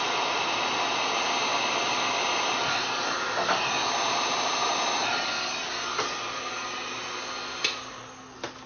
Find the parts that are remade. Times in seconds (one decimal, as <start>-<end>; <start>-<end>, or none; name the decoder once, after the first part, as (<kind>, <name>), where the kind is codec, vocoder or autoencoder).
none